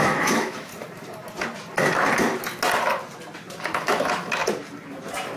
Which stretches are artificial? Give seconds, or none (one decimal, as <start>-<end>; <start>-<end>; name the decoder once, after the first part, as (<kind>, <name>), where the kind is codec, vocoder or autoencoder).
0.0-0.7 (autoencoder, DAC-VAE); 3.6-4.4